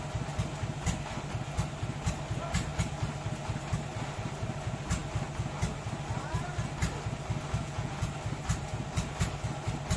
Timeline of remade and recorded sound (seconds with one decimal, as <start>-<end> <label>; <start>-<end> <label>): 0.0-7.6 recorded; 7.6-8.1 remade; 8.1-10.0 recorded